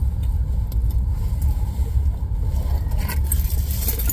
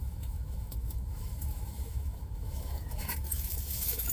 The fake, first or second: second